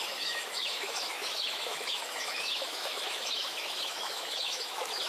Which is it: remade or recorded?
remade